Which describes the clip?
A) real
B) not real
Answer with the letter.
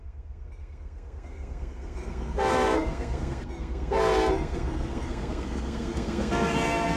B